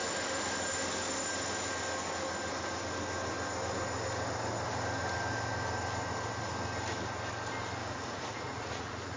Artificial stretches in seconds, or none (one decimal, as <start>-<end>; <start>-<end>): 7.8-9.2